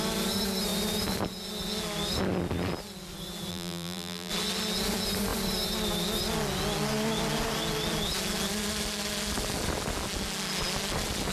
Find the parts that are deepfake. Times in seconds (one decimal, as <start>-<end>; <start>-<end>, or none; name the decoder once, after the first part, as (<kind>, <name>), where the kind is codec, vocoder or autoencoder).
3.5-4.3 (vocoder, BigVGAN v2)